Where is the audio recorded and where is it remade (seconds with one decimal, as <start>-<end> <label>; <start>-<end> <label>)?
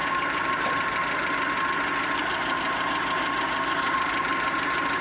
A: 0.0-0.6 remade; 0.6-2.2 recorded; 2.2-2.9 remade; 2.9-4.1 recorded; 4.1-5.0 remade